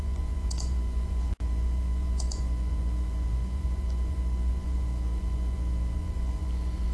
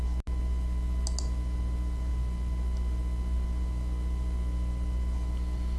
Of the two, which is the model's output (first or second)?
first